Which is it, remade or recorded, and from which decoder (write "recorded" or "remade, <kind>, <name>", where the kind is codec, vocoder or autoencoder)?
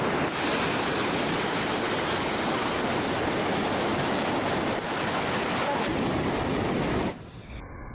recorded